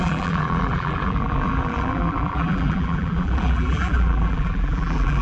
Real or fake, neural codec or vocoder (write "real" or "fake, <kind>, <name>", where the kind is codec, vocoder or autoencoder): fake, vocoder, BigVGAN v2